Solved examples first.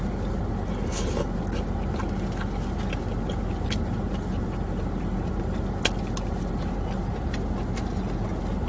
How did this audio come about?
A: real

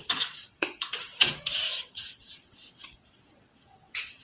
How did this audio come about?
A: fake